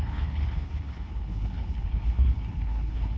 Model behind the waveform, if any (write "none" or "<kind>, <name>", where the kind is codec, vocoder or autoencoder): codec, HILCodec